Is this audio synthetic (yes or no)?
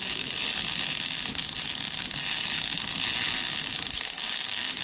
no